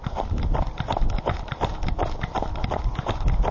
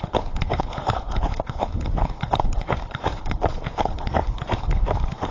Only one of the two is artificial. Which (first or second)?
second